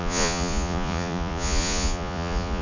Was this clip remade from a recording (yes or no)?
yes